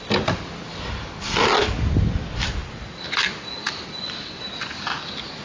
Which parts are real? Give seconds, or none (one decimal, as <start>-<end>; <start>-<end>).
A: 0.0-5.4